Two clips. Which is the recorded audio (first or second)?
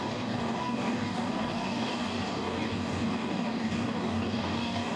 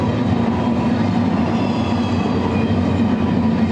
second